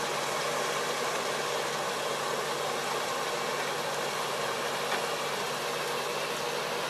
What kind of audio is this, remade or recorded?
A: recorded